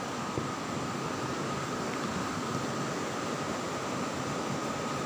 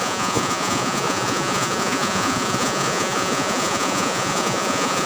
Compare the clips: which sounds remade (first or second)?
second